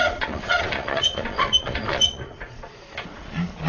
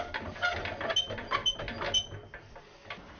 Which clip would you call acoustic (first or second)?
second